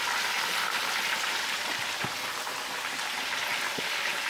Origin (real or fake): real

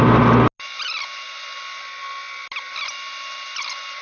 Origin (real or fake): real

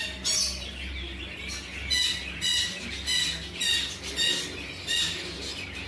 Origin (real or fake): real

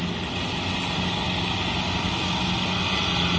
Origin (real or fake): real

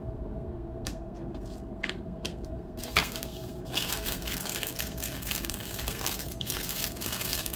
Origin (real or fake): fake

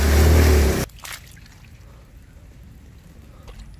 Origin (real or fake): real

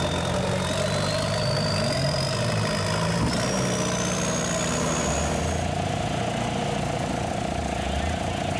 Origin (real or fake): real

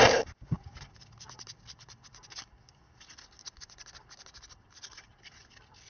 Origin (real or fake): real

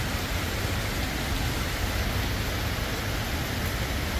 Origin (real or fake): real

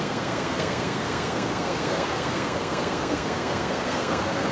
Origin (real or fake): fake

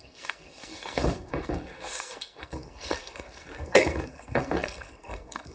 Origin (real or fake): fake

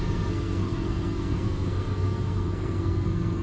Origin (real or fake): fake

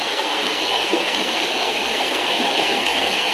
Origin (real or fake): fake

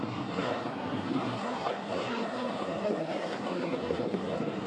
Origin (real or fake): fake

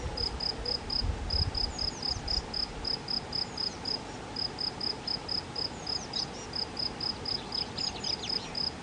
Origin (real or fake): real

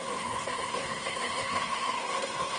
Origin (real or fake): fake